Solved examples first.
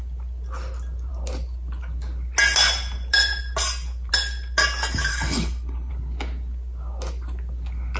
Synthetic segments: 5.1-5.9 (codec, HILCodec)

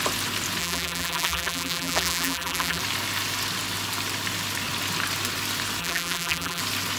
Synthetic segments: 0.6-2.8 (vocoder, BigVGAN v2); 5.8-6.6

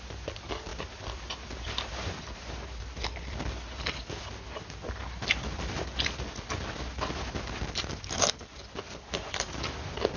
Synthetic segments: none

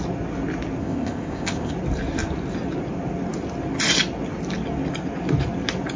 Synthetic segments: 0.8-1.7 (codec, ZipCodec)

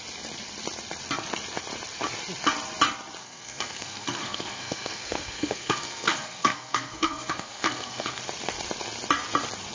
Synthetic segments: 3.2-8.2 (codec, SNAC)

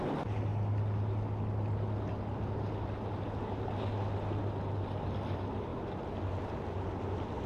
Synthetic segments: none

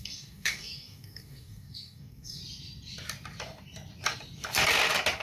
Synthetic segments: 0.0-2.4 (codec, DAC)

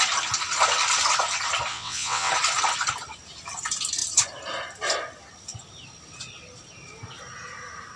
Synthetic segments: 1.7-2.3 (vocoder, WaveNeXt)